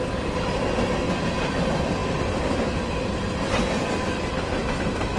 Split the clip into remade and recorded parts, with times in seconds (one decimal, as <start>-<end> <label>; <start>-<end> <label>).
0.0-5.2 recorded